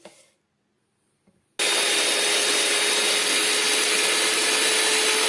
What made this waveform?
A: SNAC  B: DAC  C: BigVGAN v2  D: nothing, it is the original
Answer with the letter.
D